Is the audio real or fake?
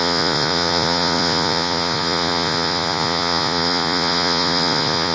fake